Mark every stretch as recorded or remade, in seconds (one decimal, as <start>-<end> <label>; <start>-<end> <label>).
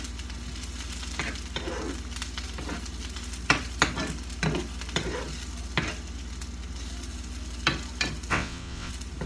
0.0-8.3 recorded; 8.3-8.9 remade; 8.9-9.3 recorded